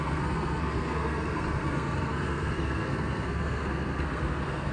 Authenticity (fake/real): fake